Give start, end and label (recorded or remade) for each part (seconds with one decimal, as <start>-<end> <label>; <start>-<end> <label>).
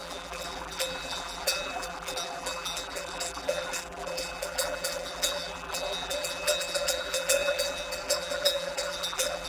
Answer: 0.0-9.5 remade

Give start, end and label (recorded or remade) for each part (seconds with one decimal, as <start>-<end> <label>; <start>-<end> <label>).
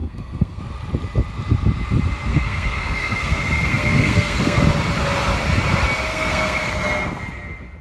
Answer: 0.0-0.6 remade; 0.6-2.3 recorded; 2.3-4.6 remade; 4.6-6.1 recorded; 6.1-6.7 remade; 6.7-7.8 recorded